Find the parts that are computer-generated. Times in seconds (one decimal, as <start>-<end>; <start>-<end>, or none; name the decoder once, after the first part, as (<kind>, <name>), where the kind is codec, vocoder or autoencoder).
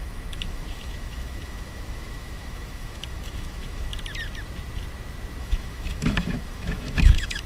0.0-3.9 (autoencoder, DAC-VAE); 5.4-7.5